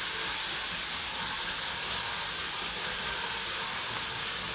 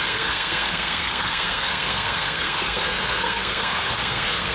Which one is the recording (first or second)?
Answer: first